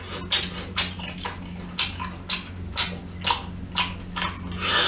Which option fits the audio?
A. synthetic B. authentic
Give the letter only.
B